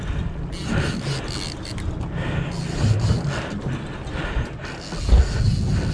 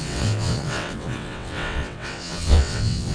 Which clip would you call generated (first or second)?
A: second